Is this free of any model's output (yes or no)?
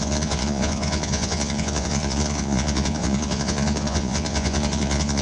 no